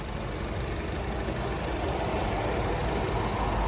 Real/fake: real